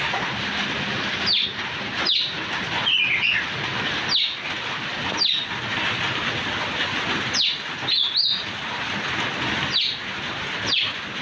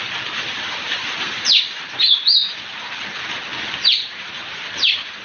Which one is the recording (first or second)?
first